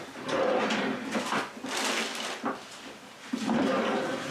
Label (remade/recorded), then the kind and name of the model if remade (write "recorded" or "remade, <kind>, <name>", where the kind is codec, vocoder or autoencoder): recorded